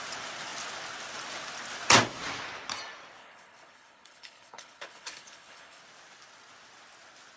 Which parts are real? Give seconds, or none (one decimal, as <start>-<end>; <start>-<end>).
0.0-3.2; 5.8-7.4